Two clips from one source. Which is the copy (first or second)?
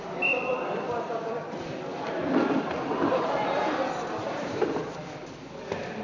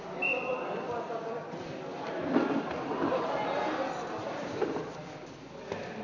first